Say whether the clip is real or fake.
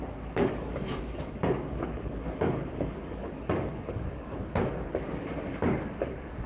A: fake